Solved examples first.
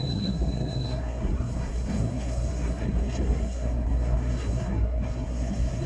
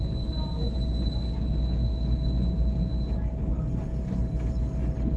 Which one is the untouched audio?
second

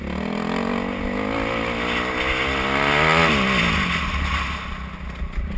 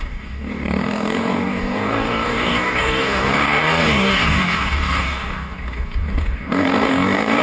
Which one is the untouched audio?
first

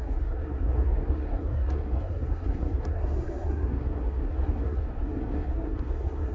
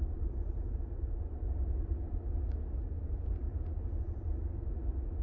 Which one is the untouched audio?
second